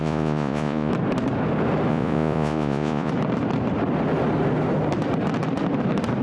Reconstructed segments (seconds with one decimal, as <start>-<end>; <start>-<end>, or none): 0.0-0.9; 1.9-3.1